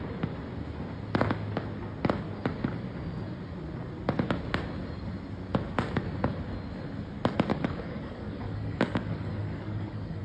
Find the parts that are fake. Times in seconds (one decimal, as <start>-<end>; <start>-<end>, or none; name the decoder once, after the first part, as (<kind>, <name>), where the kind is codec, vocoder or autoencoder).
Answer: 7.5-10.2 (codec, DAC)